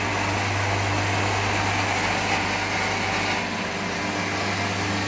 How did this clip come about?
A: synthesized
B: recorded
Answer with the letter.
B